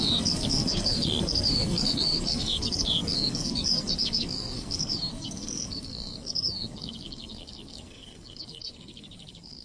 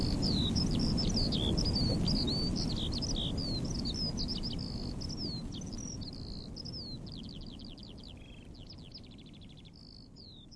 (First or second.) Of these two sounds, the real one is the second